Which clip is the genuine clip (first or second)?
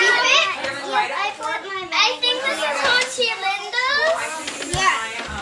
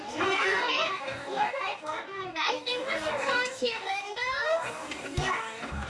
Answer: first